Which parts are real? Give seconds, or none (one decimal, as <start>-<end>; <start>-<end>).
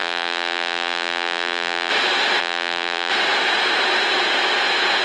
1.9-2.4; 3.1-5.0